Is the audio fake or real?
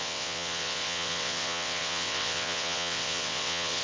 fake